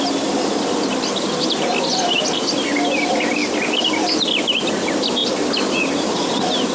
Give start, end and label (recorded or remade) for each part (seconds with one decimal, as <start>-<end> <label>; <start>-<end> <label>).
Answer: 0.0-6.7 recorded